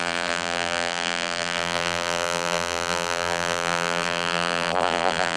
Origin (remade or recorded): remade